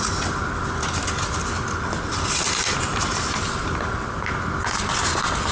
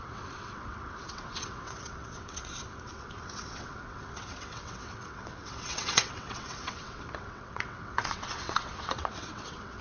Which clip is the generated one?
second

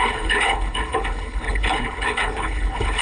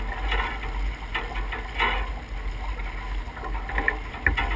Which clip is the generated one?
first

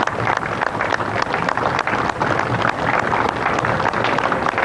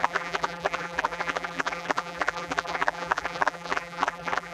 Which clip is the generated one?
second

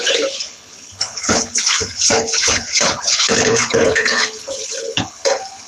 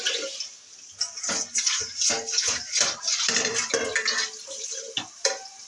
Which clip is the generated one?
first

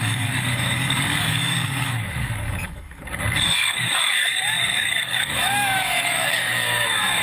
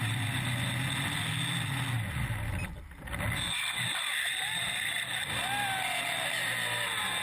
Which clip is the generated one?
first